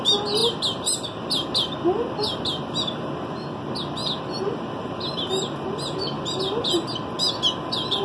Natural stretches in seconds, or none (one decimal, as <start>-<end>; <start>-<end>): 0.0-8.0